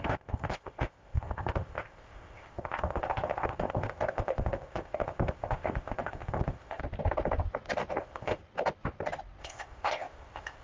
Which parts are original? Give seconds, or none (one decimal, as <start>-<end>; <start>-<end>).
6.8-8.0; 8.4-9.4